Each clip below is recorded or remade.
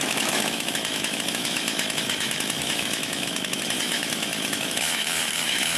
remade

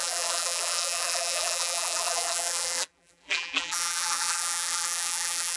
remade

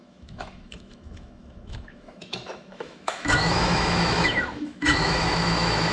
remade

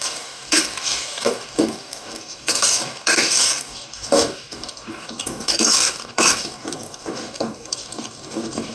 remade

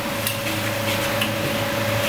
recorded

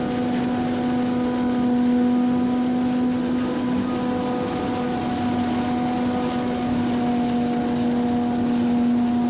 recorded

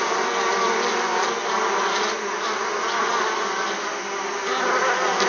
recorded